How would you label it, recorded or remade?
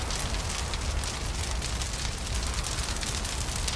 recorded